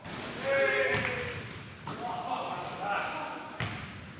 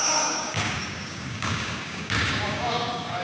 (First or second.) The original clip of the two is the first